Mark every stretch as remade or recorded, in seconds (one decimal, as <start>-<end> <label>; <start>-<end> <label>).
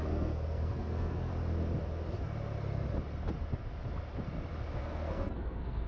0.0-1.3 remade; 1.3-4.8 recorded; 4.8-5.9 remade